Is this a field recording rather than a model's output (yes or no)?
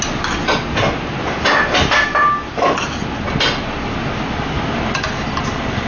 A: yes